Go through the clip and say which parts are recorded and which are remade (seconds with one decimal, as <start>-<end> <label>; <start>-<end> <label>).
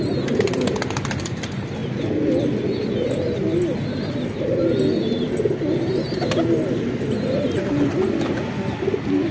0.0-9.3 recorded